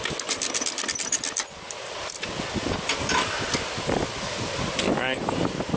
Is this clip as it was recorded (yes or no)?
yes